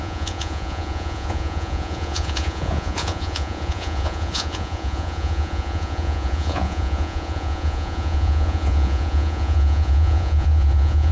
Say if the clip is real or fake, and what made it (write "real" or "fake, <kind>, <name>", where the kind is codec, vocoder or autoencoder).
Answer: fake, vocoder, Vocos